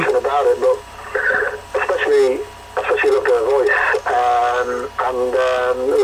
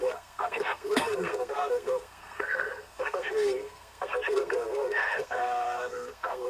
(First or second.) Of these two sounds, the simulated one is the second